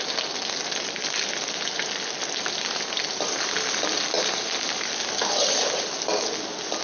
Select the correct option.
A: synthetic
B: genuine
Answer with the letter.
B